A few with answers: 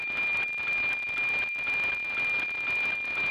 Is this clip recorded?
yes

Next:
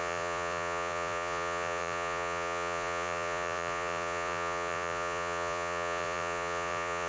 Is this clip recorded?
no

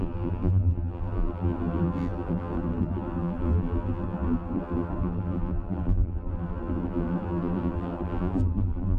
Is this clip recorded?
no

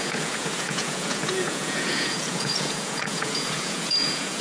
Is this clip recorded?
no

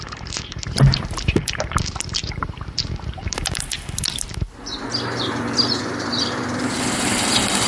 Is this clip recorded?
no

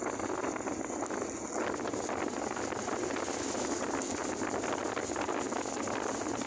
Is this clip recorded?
yes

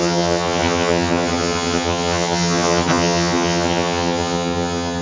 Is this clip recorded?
no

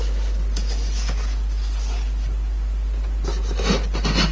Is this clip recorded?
yes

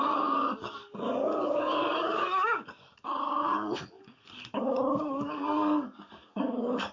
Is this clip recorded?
no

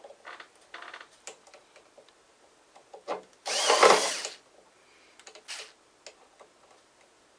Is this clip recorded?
yes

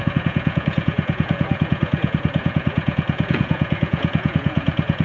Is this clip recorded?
no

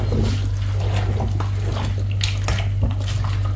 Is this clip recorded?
yes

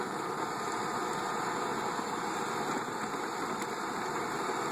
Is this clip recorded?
yes